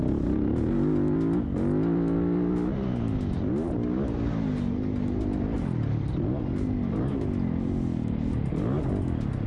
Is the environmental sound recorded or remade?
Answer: recorded